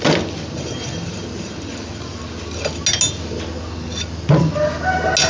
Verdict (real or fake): real